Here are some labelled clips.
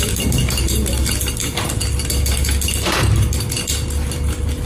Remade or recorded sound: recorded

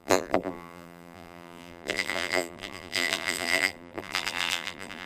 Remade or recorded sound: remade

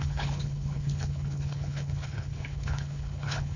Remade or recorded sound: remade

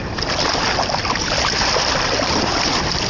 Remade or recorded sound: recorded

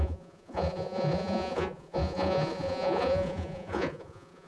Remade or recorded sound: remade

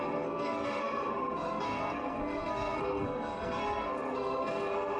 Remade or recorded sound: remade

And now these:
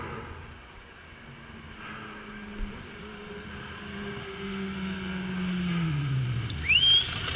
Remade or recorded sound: recorded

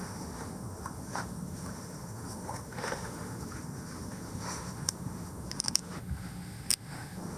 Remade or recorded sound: remade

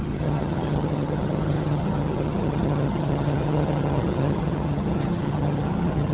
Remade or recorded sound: remade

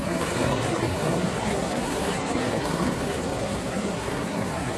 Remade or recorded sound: remade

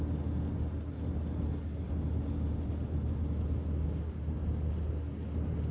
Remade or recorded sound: recorded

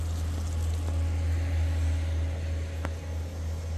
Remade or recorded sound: recorded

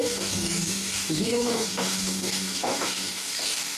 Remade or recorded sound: remade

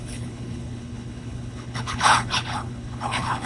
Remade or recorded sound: remade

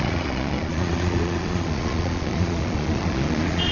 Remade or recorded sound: remade